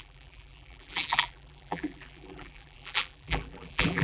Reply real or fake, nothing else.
fake